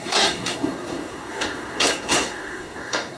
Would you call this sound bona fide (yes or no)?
no